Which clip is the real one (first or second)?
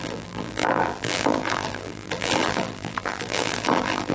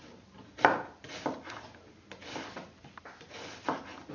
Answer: second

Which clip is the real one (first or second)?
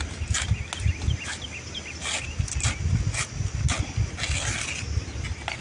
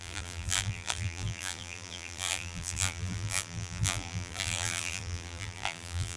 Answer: first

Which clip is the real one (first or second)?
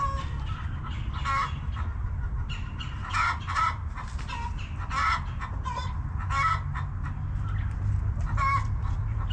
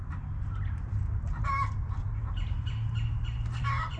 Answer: first